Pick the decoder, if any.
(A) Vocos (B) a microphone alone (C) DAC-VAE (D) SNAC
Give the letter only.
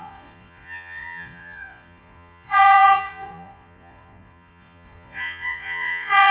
A